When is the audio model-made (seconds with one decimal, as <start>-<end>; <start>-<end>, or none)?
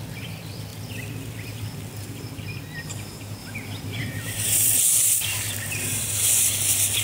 3.4-4.9